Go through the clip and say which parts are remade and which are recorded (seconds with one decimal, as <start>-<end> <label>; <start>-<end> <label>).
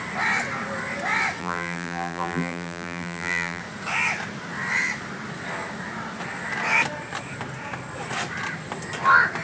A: 0.0-1.4 recorded; 1.4-3.6 remade; 3.6-9.4 recorded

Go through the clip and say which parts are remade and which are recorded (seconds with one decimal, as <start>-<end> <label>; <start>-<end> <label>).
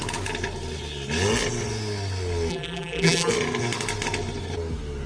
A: 0.0-2.5 recorded; 2.5-3.3 remade; 3.3-5.1 recorded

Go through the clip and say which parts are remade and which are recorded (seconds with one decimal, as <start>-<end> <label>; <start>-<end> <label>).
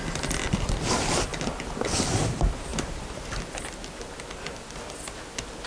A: 0.0-5.7 recorded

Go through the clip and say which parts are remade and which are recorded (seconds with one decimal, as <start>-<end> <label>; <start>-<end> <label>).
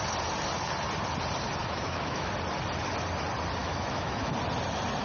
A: 0.0-1.6 recorded; 1.6-2.3 remade; 2.3-3.6 recorded; 3.6-4.3 remade; 4.3-5.0 recorded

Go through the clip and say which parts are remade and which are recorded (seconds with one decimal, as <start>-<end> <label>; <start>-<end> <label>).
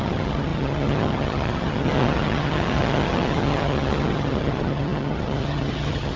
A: 0.0-6.2 remade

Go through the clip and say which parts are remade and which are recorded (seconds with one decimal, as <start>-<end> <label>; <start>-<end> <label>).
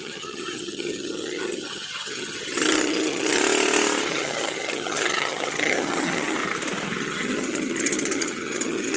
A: 0.0-3.4 remade; 3.4-4.1 recorded; 4.1-6.4 remade; 6.4-7.0 recorded; 7.0-9.0 remade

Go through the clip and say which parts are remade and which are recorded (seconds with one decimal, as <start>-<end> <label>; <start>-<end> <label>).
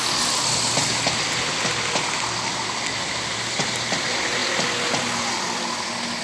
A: 0.0-6.2 recorded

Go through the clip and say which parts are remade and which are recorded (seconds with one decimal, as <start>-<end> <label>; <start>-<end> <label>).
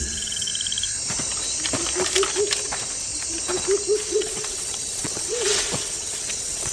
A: 0.0-0.5 remade; 0.5-4.1 recorded; 4.1-6.7 remade